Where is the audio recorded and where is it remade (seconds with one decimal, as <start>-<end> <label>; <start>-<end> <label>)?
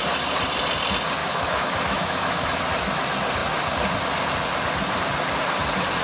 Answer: 0.0-1.2 recorded; 1.2-2.6 remade; 2.6-6.0 recorded